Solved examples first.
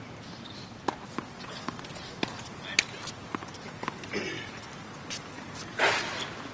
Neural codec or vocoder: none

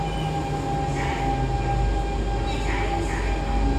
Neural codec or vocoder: none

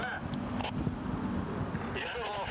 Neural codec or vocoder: none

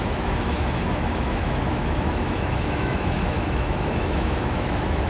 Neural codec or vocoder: autoencoder, DAC-VAE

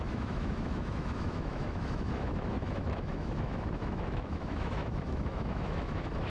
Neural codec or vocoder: autoencoder, DAC-VAE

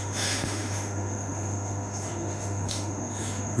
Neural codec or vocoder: autoencoder, DAC-VAE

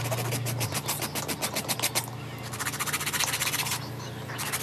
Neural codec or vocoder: none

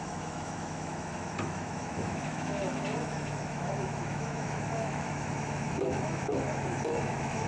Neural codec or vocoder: autoencoder, DAC-VAE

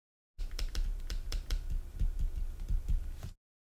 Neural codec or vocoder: none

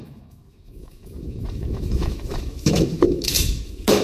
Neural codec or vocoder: autoencoder, DAC-VAE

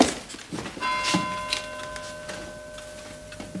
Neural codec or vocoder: none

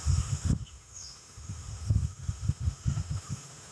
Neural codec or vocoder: autoencoder, DAC-VAE